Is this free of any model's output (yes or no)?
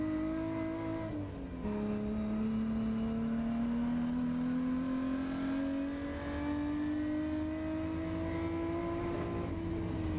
yes